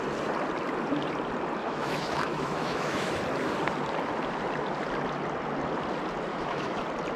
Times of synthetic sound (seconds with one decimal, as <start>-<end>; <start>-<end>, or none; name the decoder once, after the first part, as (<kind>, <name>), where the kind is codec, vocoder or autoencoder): 1.6-3.1 (autoencoder, DAC-VAE); 6.3-6.8